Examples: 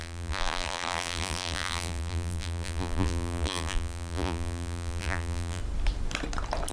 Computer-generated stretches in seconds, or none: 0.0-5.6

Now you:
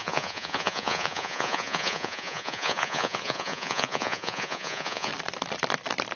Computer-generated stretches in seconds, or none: 0.0-5.1

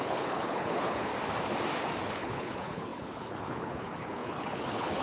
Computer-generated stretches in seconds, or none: 0.0-1.1; 2.1-5.0

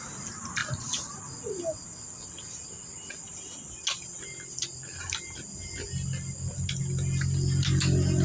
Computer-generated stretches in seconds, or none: none

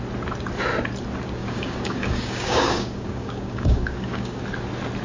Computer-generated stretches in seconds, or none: 1.4-4.4

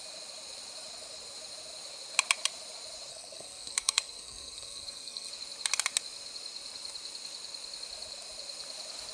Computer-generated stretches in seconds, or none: 3.1-5.3

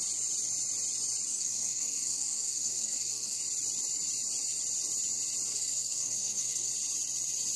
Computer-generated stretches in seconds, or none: 1.3-3.4; 5.5-6.7

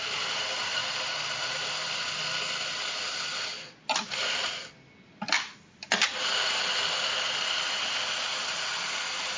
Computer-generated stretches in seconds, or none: none